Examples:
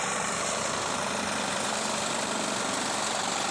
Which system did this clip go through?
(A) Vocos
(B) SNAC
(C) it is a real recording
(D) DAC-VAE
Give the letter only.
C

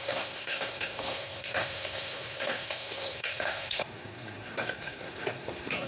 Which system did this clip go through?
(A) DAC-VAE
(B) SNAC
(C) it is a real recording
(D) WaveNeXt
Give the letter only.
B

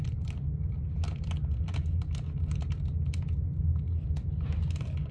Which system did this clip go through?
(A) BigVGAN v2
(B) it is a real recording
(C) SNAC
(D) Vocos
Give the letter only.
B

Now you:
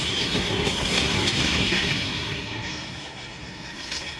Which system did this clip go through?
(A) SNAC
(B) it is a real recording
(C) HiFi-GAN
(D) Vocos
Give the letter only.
A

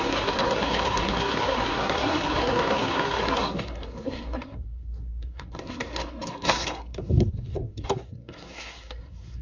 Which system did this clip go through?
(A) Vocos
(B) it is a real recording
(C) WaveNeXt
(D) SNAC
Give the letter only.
D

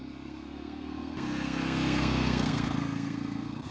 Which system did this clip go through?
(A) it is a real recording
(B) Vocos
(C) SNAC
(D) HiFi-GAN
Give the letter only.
C